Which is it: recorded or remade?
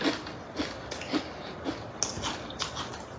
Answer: recorded